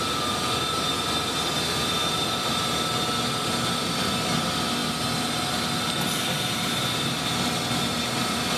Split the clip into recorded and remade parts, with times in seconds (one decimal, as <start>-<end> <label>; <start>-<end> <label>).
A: 0.0-8.6 recorded